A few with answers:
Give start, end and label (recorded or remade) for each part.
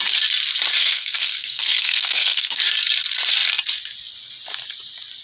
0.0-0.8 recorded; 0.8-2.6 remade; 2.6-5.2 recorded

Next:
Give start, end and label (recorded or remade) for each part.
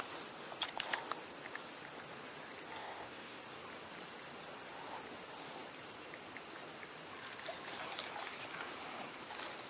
0.0-2.8 recorded; 2.8-3.4 remade; 3.4-9.7 recorded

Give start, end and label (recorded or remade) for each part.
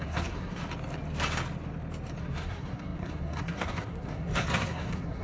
0.0-0.6 remade; 0.6-2.2 recorded; 2.2-5.2 remade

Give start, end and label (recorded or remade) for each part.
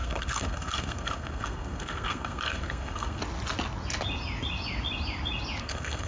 0.0-3.2 remade; 3.2-5.6 recorded; 5.6-6.1 remade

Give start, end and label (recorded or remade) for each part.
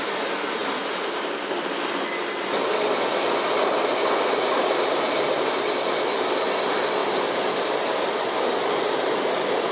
0.0-9.7 recorded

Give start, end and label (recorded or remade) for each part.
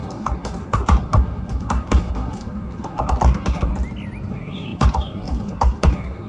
0.0-3.7 remade; 3.7-4.3 recorded; 4.3-6.3 remade